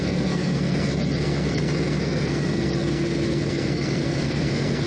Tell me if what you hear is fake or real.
fake